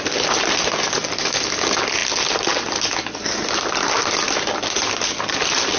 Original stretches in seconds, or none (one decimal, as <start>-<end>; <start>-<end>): 0.0-5.8